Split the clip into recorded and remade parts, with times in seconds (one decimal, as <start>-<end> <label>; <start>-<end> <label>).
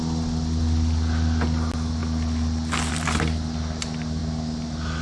0.0-5.0 recorded